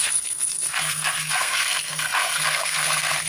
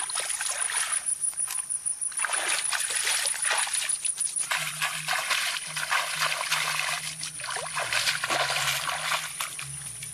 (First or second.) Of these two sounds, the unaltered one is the second